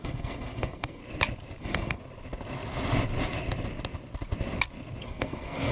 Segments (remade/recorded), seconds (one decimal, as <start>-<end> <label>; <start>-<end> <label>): 0.0-1.0 remade; 1.0-1.6 recorded; 1.6-2.0 remade; 2.0-5.0 recorded; 5.0-5.7 remade